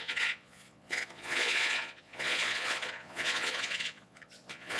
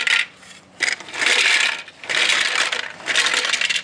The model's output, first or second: first